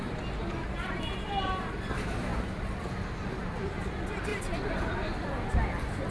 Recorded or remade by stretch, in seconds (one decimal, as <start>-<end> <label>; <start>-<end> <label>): 0.0-6.1 recorded